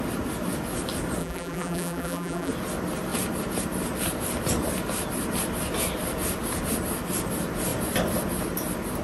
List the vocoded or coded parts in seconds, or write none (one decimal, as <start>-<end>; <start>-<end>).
1.2-2.5